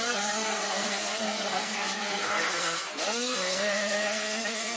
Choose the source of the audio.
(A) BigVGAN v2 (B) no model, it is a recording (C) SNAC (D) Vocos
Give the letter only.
C